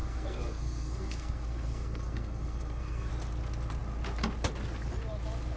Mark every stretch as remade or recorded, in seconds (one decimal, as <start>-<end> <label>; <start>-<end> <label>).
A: 0.0-3.1 remade; 3.1-5.6 recorded